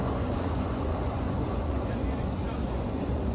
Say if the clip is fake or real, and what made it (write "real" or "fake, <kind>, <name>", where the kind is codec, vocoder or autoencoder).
fake, vocoder, Vocos